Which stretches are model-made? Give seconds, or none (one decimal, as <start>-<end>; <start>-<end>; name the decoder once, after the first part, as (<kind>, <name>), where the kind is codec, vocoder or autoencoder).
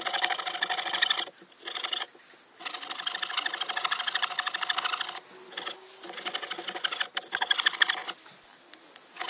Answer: none